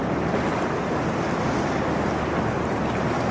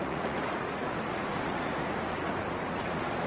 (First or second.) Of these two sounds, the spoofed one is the second